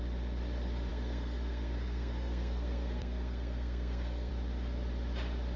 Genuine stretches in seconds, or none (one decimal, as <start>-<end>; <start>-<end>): 0.0-0.9; 4.3-5.6